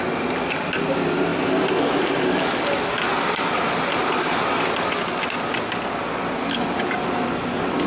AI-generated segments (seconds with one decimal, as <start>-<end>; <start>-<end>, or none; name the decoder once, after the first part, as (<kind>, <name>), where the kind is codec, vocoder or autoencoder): none